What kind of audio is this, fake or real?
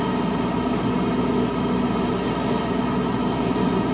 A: real